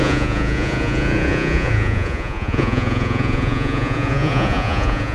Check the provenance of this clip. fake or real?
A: fake